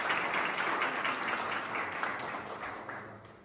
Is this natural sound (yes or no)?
yes